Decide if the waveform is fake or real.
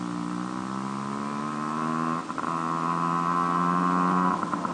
real